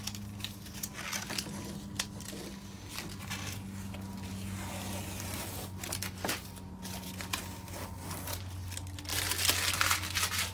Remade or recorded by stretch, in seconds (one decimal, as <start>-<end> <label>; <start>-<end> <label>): 0.0-10.5 recorded